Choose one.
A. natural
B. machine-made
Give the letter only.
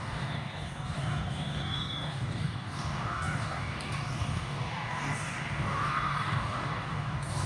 B